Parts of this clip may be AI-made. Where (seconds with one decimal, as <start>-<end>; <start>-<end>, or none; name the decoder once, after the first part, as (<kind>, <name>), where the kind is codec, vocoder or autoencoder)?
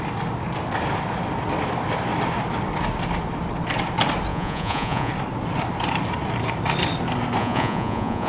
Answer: 4.3-5.1 (vocoder, Vocos); 7.4-8.3